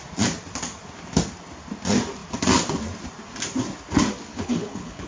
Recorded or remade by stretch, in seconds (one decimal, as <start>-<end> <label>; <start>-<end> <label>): 0.0-4.3 recorded; 4.3-5.1 remade